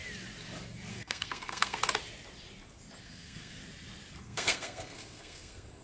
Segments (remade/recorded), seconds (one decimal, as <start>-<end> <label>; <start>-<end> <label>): 0.0-0.9 recorded; 0.9-1.8 remade; 1.8-3.0 recorded; 3.0-3.6 remade; 3.6-4.2 recorded; 4.2-5.8 remade